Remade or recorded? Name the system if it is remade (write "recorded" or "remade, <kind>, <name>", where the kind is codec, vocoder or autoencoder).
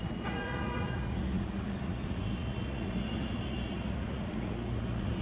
remade, vocoder, Vocos